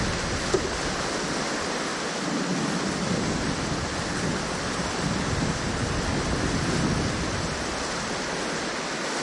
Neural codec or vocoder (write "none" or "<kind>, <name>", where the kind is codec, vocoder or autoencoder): none